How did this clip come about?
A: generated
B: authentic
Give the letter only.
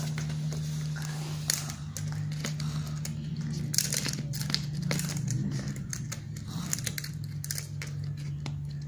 B